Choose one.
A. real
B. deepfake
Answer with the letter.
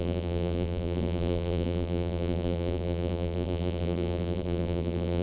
B